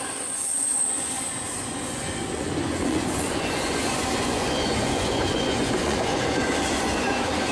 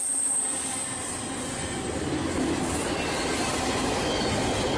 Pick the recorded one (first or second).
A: second